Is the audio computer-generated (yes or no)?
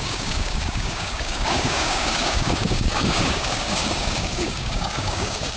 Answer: yes